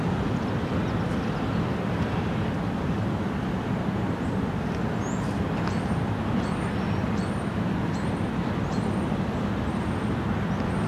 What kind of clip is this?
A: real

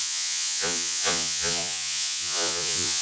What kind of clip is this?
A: fake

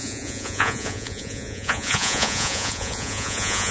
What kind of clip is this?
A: fake